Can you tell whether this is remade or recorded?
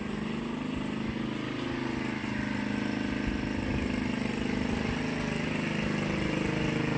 recorded